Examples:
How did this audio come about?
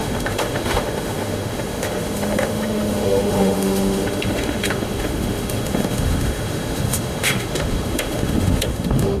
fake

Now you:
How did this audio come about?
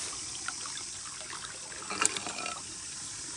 real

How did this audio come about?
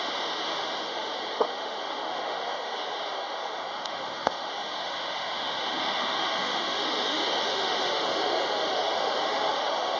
fake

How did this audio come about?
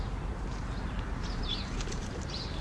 fake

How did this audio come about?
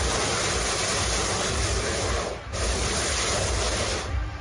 real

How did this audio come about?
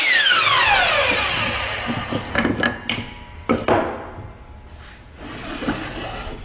real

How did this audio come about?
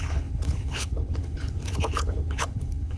fake